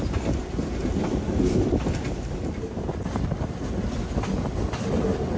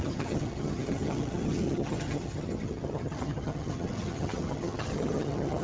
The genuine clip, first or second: first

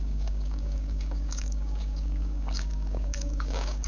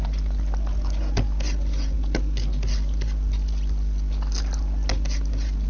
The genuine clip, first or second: second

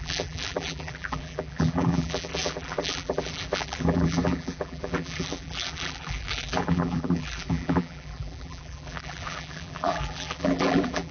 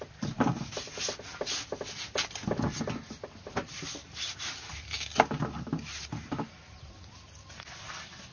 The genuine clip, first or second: second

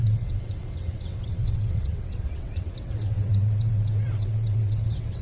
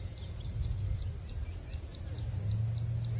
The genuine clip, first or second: second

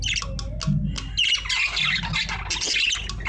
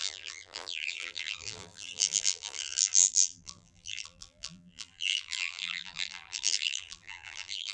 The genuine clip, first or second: first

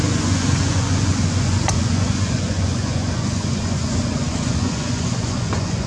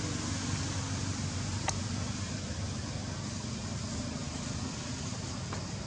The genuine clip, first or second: second